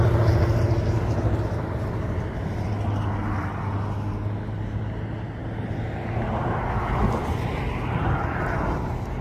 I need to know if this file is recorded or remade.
recorded